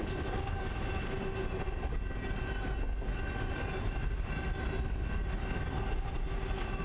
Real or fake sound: real